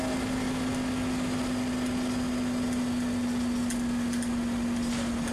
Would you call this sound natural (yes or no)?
yes